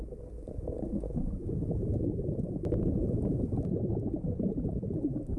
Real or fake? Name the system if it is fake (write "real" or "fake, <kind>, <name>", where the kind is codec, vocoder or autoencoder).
fake, vocoder, BigVGAN v2